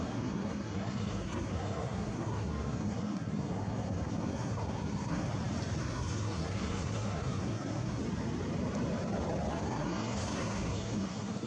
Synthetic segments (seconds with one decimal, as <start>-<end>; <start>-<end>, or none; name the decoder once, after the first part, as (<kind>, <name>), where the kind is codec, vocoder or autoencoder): 0.0-5.3 (codec, SNAC); 5.8-8.0; 9.5-11.5